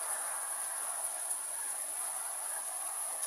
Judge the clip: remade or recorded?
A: remade